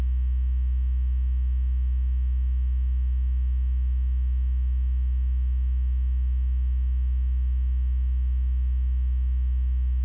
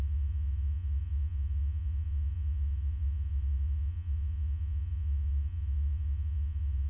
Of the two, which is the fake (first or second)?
second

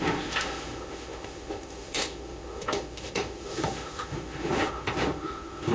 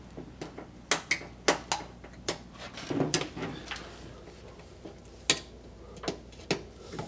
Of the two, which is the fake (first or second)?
first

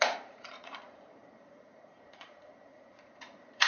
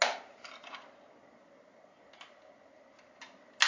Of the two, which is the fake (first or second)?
first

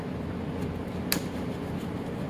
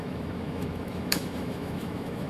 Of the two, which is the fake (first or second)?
second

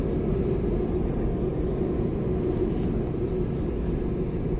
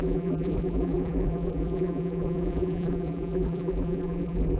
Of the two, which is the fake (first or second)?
second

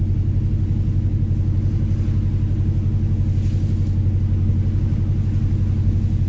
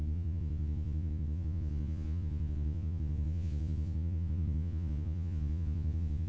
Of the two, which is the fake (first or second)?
second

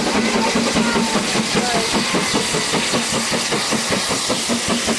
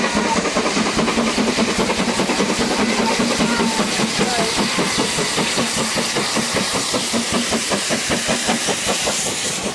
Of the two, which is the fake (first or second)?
second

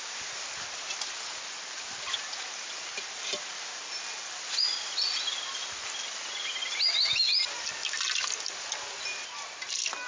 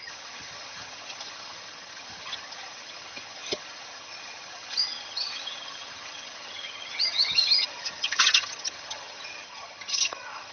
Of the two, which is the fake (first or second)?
second